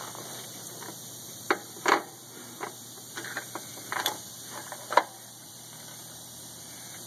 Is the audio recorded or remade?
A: remade